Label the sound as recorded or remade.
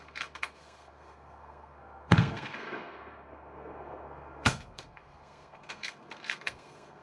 remade